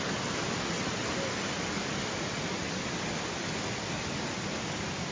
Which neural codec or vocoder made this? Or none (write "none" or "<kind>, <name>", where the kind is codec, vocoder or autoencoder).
none